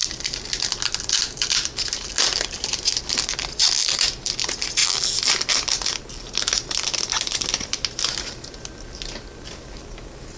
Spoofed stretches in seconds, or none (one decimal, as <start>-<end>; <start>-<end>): none